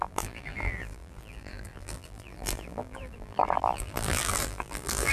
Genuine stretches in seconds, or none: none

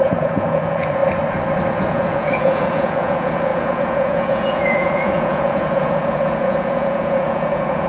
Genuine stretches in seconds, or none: 1.0-1.7

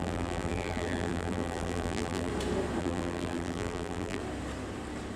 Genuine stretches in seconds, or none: 2.3-2.8; 4.2-5.2

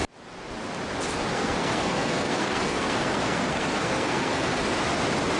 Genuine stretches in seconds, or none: 0.0-1.3; 4.5-5.4

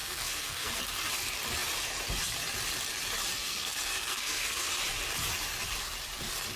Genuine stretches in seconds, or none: 0.8-3.3; 4.7-6.6

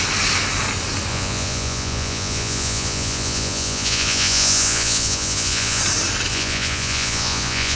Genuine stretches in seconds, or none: 0.0-1.1; 5.8-6.3

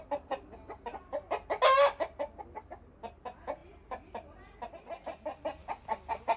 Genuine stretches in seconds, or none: 0.0-6.4